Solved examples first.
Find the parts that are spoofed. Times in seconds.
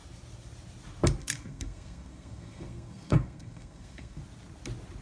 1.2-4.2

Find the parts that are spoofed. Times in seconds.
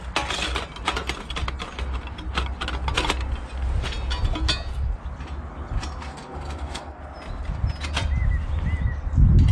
6.1-7.0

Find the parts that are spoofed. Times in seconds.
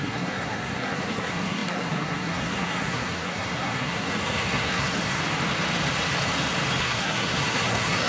0.0-5.2; 6.8-8.1